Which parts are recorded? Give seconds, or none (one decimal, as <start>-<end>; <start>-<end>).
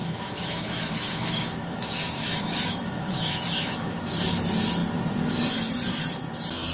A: 4.0-6.7